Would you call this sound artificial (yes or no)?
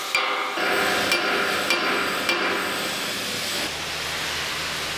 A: no